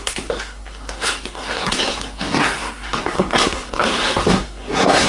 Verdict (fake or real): fake